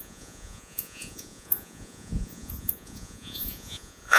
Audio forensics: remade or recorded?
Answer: remade